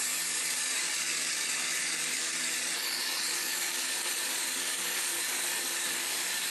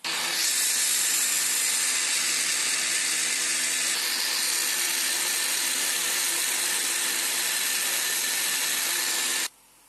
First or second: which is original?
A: second